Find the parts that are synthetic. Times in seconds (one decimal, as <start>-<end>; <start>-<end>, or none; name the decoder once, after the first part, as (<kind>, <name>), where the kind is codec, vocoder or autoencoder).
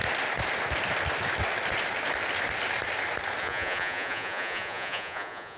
3.4-5.6 (vocoder, Vocos)